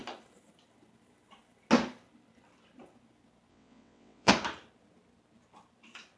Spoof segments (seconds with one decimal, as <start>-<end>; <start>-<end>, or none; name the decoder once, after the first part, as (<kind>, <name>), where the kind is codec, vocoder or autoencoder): 3.5-4.3 (vocoder, WaveNeXt)